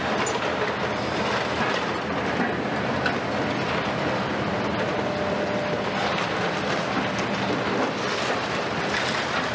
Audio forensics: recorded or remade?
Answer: recorded